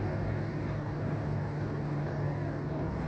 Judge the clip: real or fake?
fake